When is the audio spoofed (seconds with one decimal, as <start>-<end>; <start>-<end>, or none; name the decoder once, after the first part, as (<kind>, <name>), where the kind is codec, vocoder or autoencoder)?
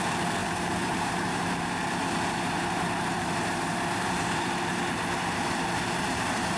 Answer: 0.0-6.6 (vocoder, BigVGAN v2)